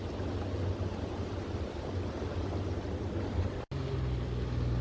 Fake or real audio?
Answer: real